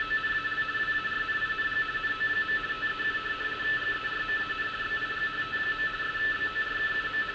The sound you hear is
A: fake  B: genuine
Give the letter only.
B